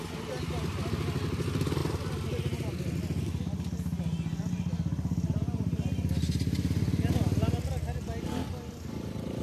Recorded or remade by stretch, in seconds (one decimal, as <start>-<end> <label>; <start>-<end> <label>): 0.0-9.4 recorded